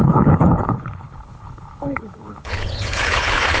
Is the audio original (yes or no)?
no